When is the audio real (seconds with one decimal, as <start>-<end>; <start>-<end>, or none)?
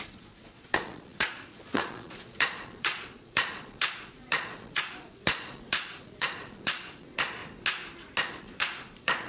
7.4-8.3